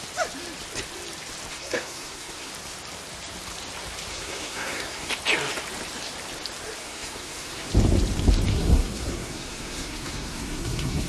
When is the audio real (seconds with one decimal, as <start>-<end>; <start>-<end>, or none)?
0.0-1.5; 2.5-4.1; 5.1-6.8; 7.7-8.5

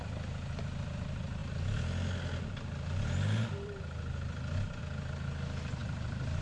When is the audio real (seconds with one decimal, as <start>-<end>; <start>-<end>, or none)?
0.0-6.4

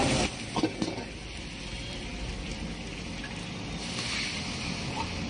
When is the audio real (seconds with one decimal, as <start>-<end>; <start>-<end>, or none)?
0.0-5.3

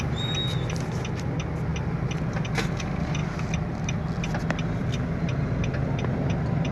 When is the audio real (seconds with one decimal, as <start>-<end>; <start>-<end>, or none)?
0.0-6.7

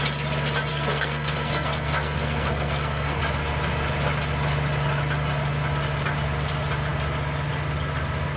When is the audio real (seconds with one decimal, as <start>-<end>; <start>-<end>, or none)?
0.0-0.7; 3.2-8.4

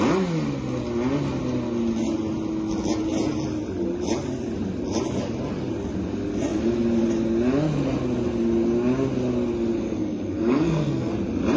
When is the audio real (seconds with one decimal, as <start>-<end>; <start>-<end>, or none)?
0.0-10.0; 11.1-11.6